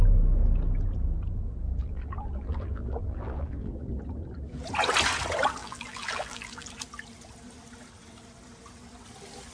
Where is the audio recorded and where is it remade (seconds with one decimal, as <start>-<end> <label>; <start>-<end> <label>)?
0.0-1.8 recorded; 1.8-3.9 remade; 3.9-5.6 recorded; 5.6-6.7 remade; 6.7-9.5 recorded